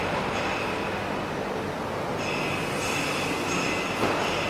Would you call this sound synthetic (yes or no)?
no